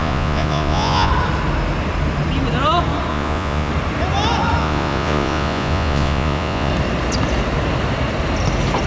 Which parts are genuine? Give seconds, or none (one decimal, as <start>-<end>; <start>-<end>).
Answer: 1.1-3.1; 3.7-4.6; 6.7-8.9